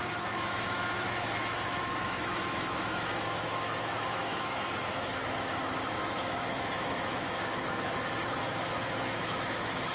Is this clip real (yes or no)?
no